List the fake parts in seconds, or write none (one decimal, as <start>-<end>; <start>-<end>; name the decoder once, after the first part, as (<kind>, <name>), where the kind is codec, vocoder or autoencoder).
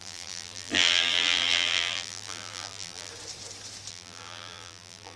0.0-3.1 (vocoder, BigVGAN v2); 3.9-5.2